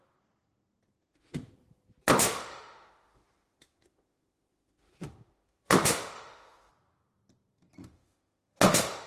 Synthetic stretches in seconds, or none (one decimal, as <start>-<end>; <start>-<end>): 1.0-1.5; 2.2-6.7; 7.8-9.1